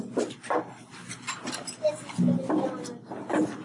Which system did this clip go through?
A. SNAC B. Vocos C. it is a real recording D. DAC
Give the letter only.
C